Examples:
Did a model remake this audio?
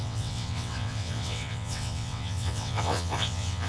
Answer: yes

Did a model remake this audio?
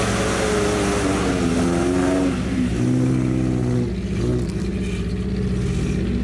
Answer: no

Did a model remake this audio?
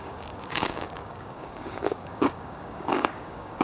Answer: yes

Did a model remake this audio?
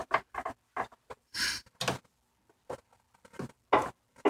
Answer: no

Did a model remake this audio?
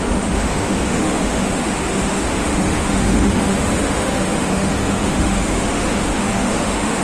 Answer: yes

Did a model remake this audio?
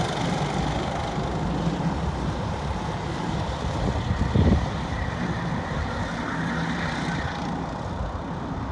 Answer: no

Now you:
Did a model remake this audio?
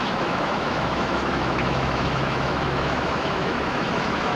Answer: yes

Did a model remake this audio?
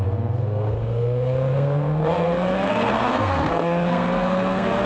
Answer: yes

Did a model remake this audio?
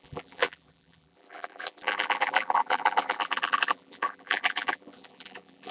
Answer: yes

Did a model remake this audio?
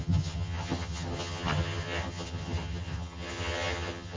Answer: yes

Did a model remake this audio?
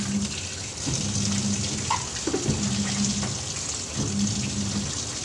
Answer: no